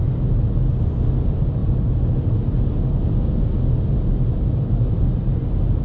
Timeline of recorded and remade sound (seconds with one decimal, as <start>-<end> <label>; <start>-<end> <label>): 0.0-5.8 recorded